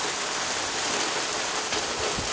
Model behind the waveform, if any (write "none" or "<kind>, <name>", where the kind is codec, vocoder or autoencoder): none